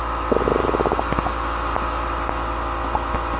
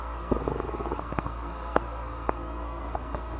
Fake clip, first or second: second